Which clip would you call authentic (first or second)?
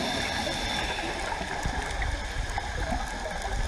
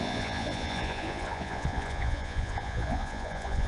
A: first